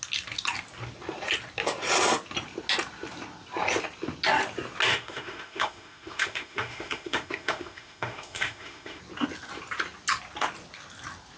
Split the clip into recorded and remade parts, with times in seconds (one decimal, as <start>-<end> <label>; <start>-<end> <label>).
0.0-4.9 recorded; 4.9-9.0 remade; 9.0-11.4 recorded